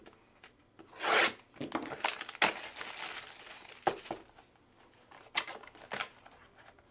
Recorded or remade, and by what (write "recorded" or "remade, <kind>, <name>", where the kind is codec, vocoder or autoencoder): recorded